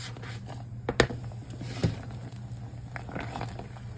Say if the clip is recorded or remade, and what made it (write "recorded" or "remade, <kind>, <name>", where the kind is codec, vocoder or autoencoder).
recorded